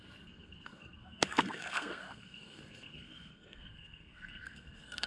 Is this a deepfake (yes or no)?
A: yes